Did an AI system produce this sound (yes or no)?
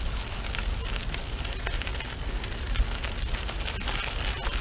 no